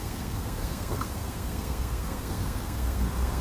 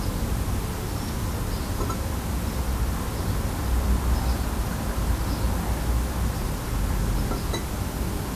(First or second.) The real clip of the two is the second